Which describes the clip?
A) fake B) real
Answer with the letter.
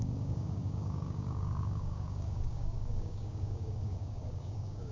A